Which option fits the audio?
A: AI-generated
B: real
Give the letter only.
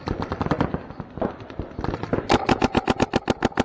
B